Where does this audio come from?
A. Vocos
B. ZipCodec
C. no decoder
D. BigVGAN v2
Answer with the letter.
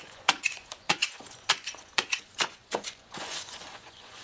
A